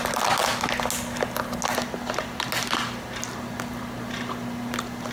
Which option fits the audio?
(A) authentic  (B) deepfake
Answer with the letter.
A